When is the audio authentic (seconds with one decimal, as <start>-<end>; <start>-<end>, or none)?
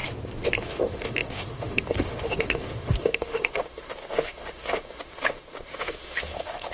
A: 0.0-0.6